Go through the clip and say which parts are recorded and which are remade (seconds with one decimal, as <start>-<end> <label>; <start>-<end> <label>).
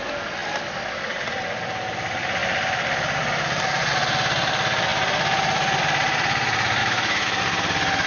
0.0-6.8 recorded; 6.8-7.4 remade; 7.4-8.1 recorded